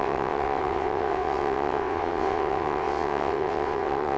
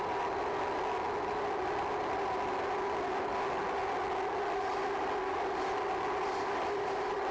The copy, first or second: first